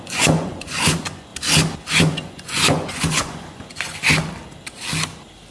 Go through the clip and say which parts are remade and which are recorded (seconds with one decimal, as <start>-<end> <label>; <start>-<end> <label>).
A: 0.0-1.3 remade; 1.3-2.0 recorded; 2.0-4.1 remade; 4.1-5.5 recorded